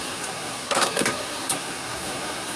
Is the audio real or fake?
fake